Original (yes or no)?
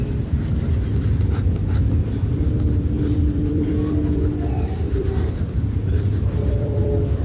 no